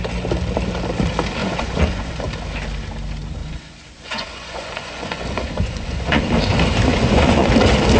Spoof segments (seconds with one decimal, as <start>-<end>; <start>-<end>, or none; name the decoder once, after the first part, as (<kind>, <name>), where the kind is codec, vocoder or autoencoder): 1.4-2.2 (vocoder, Vocos); 3.4-6.2; 6.9-7.5